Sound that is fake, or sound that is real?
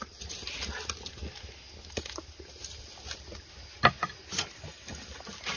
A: real